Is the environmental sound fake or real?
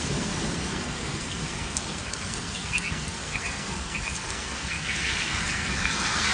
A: fake